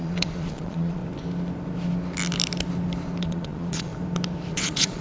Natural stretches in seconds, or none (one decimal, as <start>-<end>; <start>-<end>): 1.0-3.2; 3.9-4.5